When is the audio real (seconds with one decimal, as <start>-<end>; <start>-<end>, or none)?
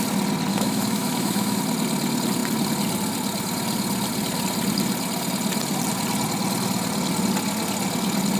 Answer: 0.0-0.5; 1.6-8.4